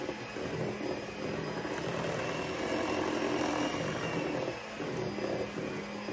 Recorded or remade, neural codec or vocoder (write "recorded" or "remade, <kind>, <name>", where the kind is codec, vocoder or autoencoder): recorded